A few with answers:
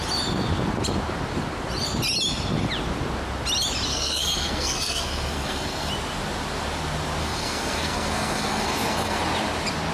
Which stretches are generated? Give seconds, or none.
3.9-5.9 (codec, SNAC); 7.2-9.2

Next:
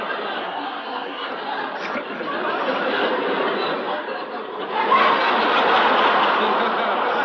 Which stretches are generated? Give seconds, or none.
0.4-1.3 (codec, SNAC)

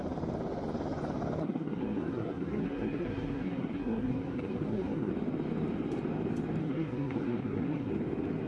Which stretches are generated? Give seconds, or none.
1.4-5.1 (codec, SNAC); 6.6-7.9

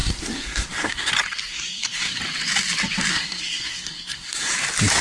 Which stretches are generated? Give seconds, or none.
0.0-1.1 (codec, SNAC); 1.5-2.2; 3.1-4.5

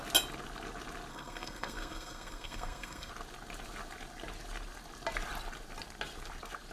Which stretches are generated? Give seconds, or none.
1.1-3.1 (codec, SNAC)